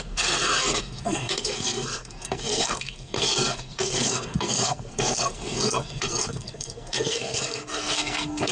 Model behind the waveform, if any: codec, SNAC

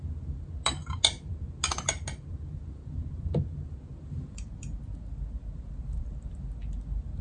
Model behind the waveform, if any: none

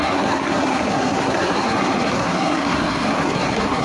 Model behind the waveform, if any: codec, SNAC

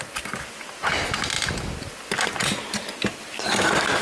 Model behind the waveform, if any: none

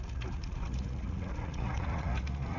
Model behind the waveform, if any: vocoder, Vocos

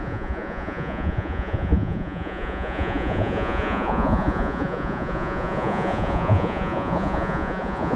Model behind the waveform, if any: vocoder, Vocos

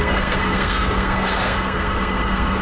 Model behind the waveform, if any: codec, SNAC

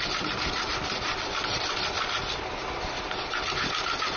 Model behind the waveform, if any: none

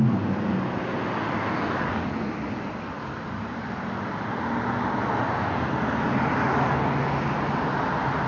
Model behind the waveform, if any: none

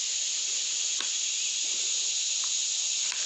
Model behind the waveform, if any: none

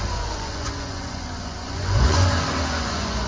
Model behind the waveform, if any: vocoder, Vocos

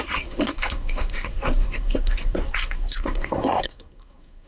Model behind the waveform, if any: codec, SNAC